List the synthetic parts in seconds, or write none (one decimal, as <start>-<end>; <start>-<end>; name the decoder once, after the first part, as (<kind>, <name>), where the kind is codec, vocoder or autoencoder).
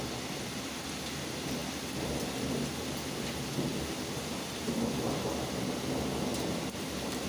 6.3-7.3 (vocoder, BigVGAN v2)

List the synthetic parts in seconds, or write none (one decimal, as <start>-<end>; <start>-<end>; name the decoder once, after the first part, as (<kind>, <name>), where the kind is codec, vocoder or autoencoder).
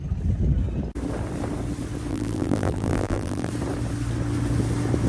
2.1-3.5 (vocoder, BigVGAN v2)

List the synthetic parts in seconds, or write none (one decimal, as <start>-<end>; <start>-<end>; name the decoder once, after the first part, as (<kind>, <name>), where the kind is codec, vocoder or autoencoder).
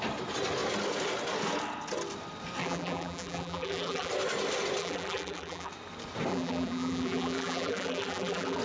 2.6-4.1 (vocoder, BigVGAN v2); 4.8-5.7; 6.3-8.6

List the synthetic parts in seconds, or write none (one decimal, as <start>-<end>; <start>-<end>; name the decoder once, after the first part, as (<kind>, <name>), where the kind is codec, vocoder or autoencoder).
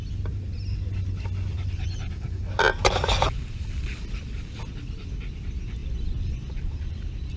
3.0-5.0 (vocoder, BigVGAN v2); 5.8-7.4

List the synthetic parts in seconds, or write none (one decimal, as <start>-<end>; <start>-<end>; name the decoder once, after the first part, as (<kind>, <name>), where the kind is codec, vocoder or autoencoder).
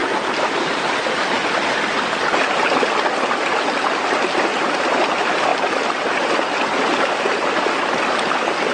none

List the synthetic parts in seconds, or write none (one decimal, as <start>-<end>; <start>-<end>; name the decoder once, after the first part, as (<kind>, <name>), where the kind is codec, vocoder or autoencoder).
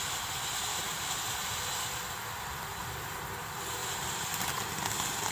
0.7-1.8 (vocoder, BigVGAN v2); 3.8-4.4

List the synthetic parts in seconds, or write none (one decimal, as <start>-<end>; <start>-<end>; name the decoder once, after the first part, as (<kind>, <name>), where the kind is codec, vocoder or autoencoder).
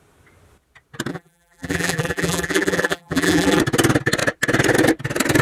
1.1-3.6 (vocoder, BigVGAN v2)